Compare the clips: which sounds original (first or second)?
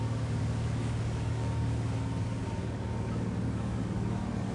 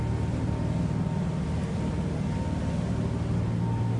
second